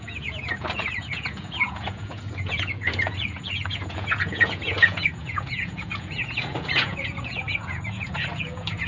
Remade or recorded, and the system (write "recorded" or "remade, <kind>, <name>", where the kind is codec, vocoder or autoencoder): remade, vocoder, Vocos